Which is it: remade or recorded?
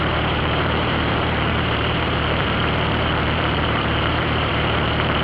remade